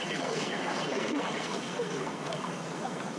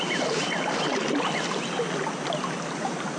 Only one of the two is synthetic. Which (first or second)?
first